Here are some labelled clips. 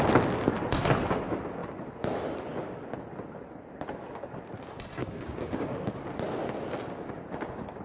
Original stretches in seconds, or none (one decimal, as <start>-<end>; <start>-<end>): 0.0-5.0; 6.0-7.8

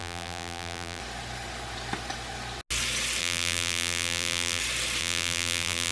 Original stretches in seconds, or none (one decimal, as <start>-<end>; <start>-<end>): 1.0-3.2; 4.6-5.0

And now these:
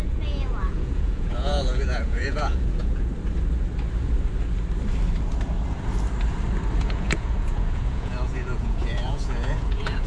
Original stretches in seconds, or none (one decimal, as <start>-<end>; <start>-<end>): 3.1-6.8